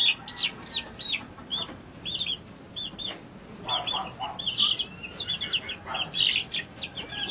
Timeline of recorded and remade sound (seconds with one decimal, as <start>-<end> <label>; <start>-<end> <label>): 0.0-7.3 recorded